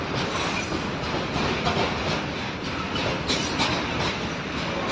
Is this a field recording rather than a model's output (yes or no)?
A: yes